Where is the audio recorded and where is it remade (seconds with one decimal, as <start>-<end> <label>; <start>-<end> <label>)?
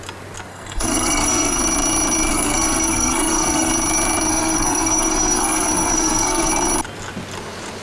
0.0-0.5 recorded; 0.5-1.6 remade; 1.6-2.3 recorded; 2.3-3.7 remade; 3.7-4.3 recorded; 4.3-6.5 remade; 6.5-7.8 recorded